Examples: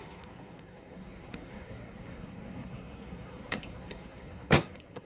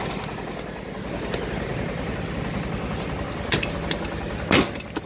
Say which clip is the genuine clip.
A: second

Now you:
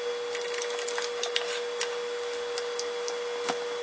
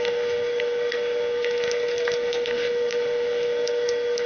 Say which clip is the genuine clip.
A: first